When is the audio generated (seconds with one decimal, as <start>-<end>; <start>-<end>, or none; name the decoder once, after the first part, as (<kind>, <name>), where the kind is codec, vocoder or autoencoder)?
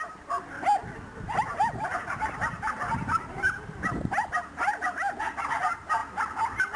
1.5-5.6 (vocoder, BigVGAN v2)